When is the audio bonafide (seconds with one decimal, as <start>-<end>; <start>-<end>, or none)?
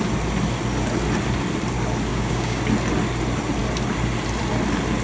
0.0-2.1; 2.6-5.0